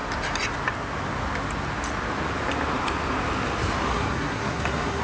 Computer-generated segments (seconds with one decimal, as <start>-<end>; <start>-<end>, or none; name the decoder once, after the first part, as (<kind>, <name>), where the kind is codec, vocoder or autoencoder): 3.9-5.0 (codec, SNAC)